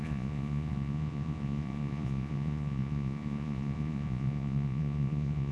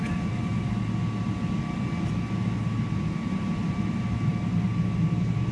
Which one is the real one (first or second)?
second